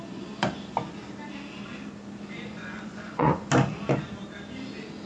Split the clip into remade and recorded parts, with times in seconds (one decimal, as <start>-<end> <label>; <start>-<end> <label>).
0.0-2.5 recorded; 2.5-3.5 remade; 3.5-5.1 recorded